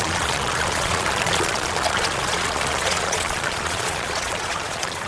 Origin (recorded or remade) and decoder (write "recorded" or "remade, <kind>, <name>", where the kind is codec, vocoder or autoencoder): remade, vocoder, Vocos